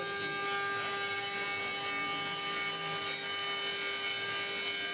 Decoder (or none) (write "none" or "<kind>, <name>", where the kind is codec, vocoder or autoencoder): none